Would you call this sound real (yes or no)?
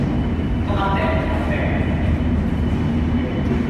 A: yes